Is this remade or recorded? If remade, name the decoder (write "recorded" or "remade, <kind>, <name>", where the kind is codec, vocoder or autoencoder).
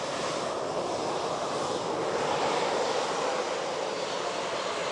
recorded